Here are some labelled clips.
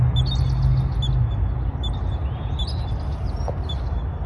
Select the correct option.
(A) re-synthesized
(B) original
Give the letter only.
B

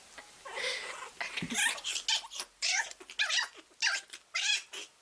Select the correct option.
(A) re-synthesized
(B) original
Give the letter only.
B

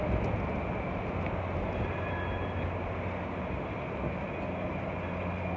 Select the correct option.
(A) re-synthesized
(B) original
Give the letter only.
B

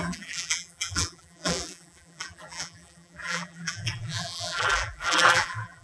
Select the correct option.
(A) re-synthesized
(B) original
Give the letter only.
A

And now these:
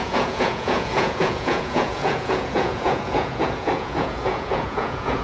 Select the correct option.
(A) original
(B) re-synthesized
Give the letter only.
B